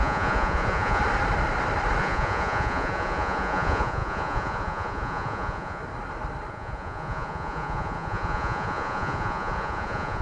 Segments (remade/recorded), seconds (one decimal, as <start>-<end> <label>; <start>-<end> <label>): 0.0-1.0 remade; 1.0-2.0 recorded; 2.0-5.8 remade; 5.8-6.5 recorded; 6.5-10.2 remade